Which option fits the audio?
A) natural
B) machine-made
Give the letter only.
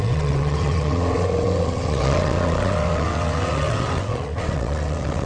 B